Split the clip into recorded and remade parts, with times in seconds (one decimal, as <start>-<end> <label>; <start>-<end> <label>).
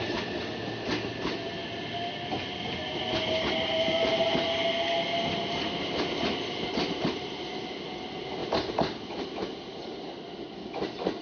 0.0-11.2 recorded